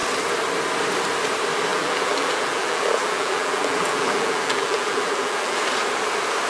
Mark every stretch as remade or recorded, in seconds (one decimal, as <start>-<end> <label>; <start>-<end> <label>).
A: 0.0-1.7 recorded; 1.7-5.6 remade; 5.6-6.5 recorded